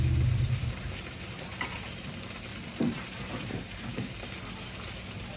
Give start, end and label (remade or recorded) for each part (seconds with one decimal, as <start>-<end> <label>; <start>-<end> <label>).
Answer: 0.0-0.6 recorded; 0.6-1.9 remade; 1.9-2.5 recorded; 2.5-3.8 remade; 3.8-5.4 recorded